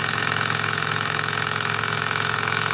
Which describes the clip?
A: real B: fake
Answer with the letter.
B